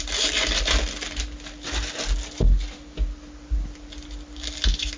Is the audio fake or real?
real